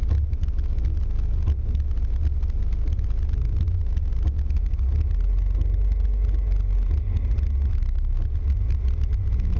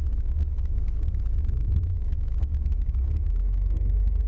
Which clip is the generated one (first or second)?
second